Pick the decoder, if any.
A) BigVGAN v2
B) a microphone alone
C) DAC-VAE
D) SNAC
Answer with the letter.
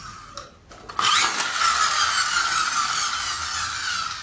B